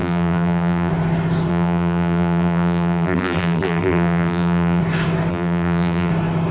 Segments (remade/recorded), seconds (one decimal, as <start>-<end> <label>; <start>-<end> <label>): 0.0-0.9 remade; 0.9-1.5 recorded; 1.5-4.8 remade; 4.8-5.3 recorded; 5.3-6.1 remade; 6.1-6.5 recorded